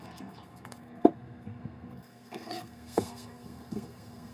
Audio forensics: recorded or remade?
remade